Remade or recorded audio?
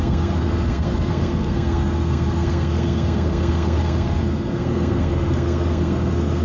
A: remade